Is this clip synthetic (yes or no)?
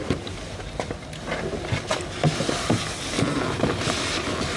no